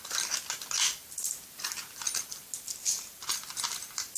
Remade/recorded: recorded